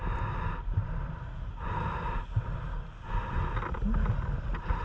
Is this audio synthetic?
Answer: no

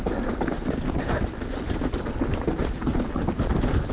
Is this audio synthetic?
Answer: no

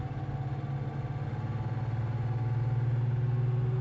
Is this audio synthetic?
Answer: no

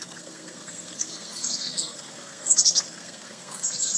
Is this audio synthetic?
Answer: yes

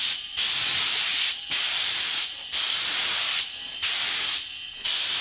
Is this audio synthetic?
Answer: no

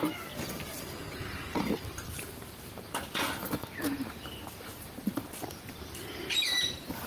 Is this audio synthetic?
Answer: yes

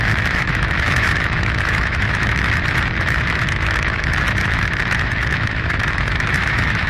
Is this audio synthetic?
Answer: yes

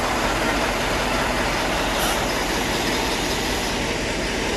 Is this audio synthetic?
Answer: no